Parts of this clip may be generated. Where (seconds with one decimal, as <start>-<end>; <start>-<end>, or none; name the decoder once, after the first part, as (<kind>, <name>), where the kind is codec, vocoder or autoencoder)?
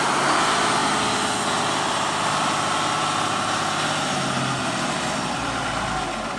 none